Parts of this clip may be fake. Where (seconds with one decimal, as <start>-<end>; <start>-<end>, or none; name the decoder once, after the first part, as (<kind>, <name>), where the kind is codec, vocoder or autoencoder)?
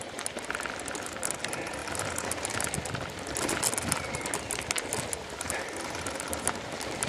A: none